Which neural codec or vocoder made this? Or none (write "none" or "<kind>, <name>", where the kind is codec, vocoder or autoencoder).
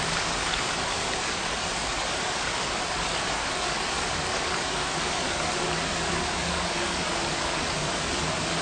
codec, DAC